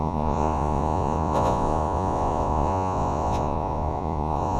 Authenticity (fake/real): fake